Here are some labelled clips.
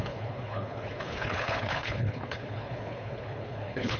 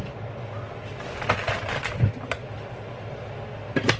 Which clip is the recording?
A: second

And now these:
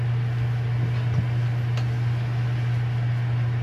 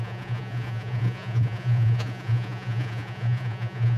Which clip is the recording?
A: first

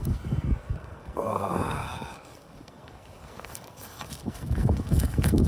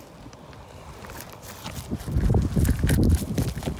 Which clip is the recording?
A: second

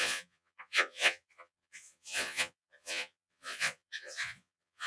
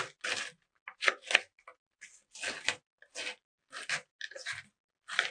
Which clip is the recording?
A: second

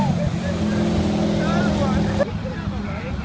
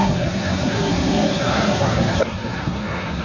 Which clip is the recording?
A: first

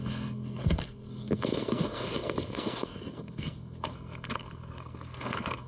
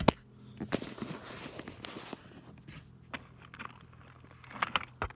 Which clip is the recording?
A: second